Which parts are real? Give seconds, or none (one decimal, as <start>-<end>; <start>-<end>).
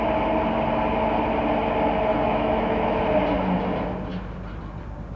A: 0.0-2.1; 3.0-5.2